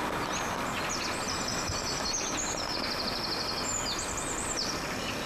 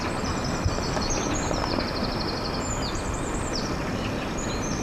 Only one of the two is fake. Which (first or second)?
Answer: second